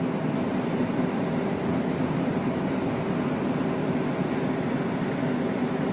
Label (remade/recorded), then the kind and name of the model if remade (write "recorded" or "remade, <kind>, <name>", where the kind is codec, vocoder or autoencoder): recorded